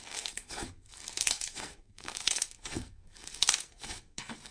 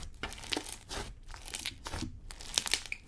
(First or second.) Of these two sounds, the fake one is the first